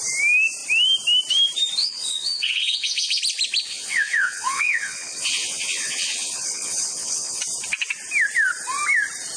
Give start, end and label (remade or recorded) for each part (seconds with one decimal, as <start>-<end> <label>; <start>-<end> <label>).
0.0-1.8 recorded; 1.8-3.2 remade; 3.2-3.7 recorded; 3.7-7.4 remade; 7.4-9.4 recorded